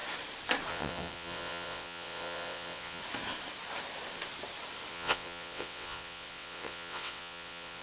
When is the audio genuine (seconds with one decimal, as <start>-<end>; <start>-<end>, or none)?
0.0-0.7; 3.0-4.9